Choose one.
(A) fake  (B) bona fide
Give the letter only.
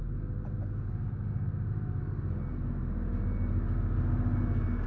B